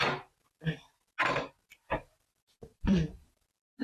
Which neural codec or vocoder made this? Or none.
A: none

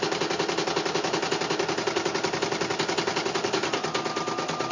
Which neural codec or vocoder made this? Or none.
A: none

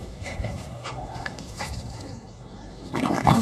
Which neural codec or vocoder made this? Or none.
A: codec, SNAC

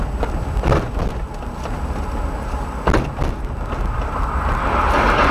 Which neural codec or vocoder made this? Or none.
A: none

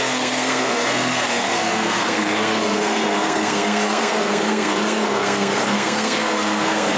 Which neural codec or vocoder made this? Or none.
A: codec, SNAC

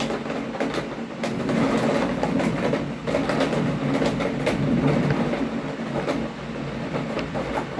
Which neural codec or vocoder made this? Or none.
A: none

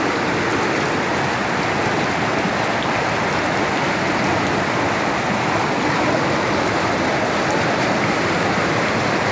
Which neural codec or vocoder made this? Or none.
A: none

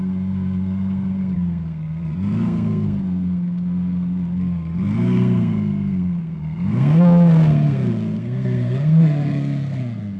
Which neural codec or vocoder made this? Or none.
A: codec, SNAC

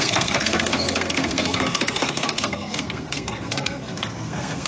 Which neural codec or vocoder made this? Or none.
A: codec, SNAC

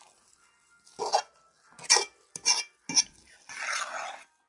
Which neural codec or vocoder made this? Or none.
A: none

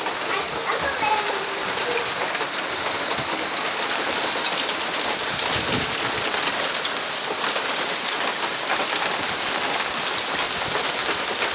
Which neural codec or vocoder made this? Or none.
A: none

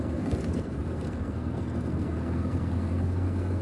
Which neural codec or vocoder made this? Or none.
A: codec, SNAC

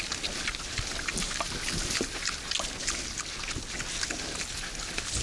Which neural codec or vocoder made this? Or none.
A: none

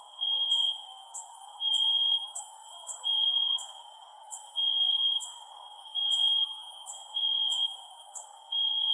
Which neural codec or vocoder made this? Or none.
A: codec, SNAC